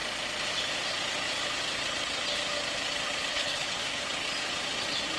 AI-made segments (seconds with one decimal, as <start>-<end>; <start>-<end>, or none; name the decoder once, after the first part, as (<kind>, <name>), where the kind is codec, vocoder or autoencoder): 3.3-4.0 (codec, HILCodec)